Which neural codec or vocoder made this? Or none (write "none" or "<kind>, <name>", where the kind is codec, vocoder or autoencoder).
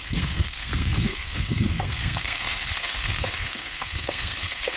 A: codec, SNAC